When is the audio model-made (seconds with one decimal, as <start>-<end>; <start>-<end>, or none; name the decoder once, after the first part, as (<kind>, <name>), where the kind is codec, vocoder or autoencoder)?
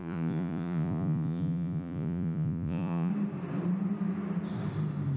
0.0-3.1 (vocoder, Vocos)